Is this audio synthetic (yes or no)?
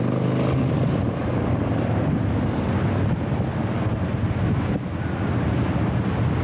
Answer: no